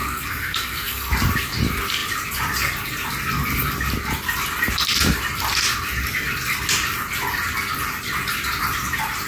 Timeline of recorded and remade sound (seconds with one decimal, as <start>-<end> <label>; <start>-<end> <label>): 0.0-1.1 remade; 1.1-9.3 recorded

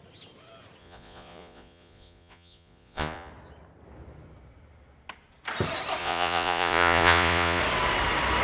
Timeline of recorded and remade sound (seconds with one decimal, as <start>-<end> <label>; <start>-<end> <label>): 0.0-0.8 recorded; 0.8-3.3 remade; 3.3-6.0 recorded; 6.0-7.6 remade; 7.6-8.4 recorded

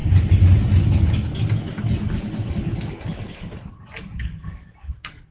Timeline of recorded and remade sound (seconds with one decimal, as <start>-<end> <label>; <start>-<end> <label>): 0.0-2.9 recorded; 2.9-3.7 remade; 3.7-4.2 recorded; 4.2-5.3 remade